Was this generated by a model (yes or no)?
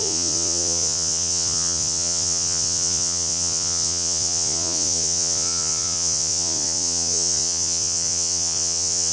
yes